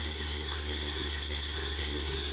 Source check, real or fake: fake